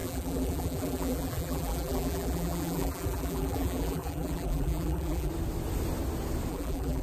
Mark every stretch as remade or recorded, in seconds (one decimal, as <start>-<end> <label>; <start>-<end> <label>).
0.0-5.3 remade; 5.3-6.5 recorded; 6.5-7.0 remade